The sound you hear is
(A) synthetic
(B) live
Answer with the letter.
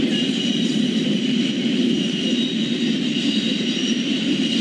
A